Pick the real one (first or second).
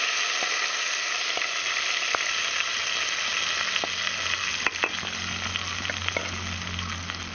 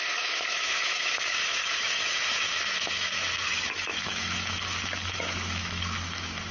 first